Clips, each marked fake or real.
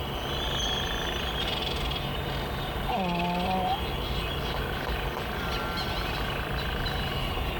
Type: real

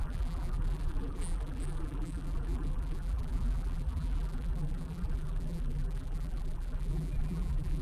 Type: fake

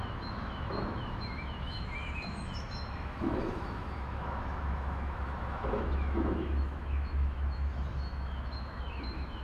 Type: fake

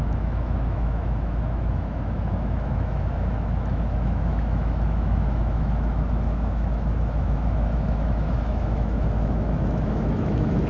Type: fake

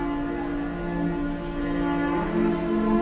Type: real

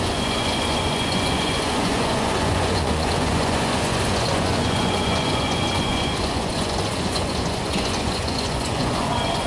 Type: fake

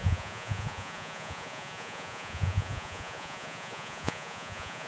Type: fake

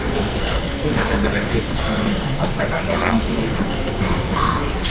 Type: fake